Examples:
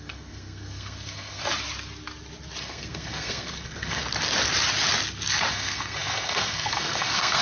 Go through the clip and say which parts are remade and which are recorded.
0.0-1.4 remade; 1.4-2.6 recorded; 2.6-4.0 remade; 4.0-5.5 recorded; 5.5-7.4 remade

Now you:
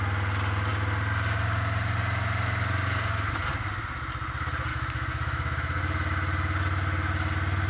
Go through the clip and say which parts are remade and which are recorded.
0.0-4.7 recorded; 4.7-5.8 remade; 5.8-7.7 recorded